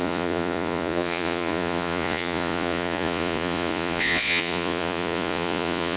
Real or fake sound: fake